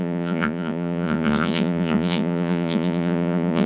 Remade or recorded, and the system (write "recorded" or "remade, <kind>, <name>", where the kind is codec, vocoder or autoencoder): remade, vocoder, Vocos